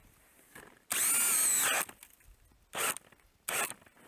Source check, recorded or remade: recorded